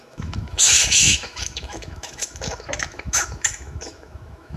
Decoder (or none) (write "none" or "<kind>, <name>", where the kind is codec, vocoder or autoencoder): autoencoder, DAC-VAE